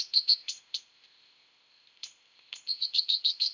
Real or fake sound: fake